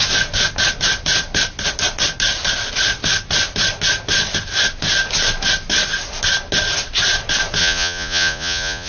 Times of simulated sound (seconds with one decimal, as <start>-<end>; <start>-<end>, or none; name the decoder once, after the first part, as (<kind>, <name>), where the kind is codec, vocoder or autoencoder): 7.6-8.9 (vocoder, Vocos)